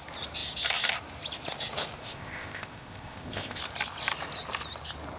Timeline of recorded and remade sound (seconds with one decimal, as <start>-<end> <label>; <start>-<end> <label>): 0.0-2.0 recorded; 2.0-3.6 remade; 3.6-5.2 recorded